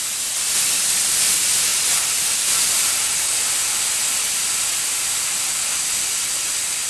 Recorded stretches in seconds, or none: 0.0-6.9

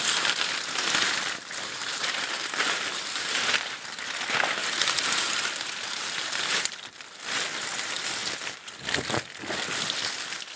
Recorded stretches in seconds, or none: 0.0-1.8; 3.5-4.6; 6.8-8.2; 8.7-10.6

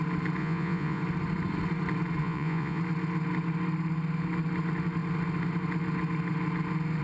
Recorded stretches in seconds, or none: 0.0-0.4; 1.0-2.2; 2.8-7.0

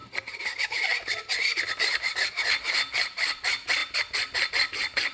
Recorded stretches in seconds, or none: 0.0-5.1